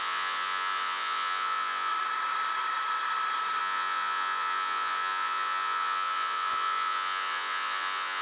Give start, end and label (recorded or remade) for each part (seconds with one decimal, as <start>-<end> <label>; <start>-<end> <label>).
0.0-1.9 remade; 1.9-3.6 recorded; 3.6-8.2 remade